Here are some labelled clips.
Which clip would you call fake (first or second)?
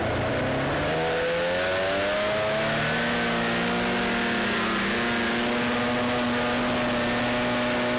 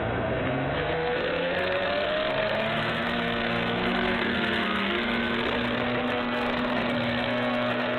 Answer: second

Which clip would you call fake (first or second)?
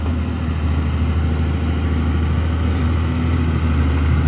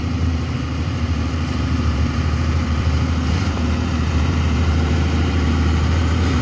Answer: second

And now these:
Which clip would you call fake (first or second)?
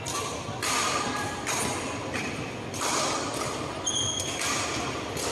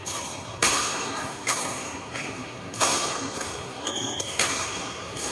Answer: second